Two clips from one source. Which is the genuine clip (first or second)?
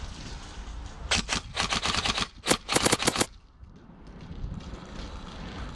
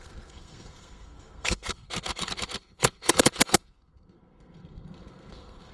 first